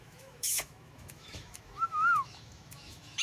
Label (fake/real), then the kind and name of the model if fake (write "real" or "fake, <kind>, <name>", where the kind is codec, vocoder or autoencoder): fake, autoencoder, DAC-VAE